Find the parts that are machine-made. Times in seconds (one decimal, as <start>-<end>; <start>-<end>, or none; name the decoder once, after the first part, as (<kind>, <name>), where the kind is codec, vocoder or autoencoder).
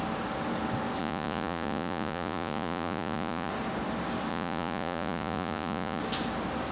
1.0-3.5 (vocoder, Vocos); 4.3-6.0